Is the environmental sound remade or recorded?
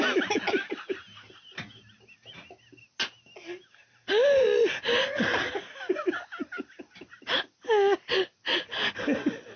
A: recorded